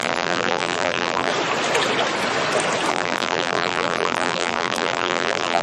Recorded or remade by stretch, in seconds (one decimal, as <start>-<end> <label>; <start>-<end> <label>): 0.0-1.3 remade; 1.3-2.9 recorded; 2.9-5.6 remade